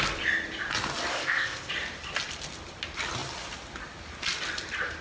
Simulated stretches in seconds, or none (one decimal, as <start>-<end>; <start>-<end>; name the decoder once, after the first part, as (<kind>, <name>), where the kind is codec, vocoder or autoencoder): 1.1-1.7 (codec, ZipCodec)

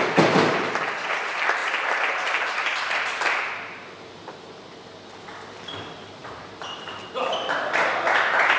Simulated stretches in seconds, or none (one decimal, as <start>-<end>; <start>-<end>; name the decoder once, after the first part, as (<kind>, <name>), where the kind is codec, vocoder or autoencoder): none

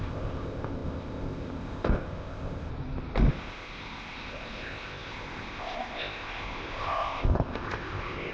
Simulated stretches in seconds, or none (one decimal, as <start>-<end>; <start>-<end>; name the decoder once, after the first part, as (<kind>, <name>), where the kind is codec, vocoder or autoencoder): 0.0-2.7 (codec, ZipCodec); 3.3-8.3

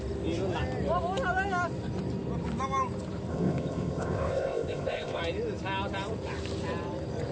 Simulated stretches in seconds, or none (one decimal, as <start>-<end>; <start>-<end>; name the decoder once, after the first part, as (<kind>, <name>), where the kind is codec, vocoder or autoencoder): 3.3-5.2 (codec, ZipCodec)

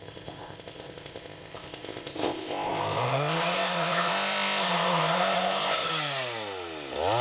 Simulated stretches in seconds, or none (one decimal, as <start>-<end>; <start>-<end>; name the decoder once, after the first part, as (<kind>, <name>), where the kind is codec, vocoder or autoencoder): 0.0-5.9 (codec, ZipCodec)